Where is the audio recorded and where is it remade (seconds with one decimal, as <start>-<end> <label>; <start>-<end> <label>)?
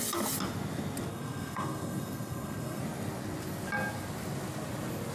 0.0-1.1 recorded; 1.1-2.8 remade; 2.8-5.1 recorded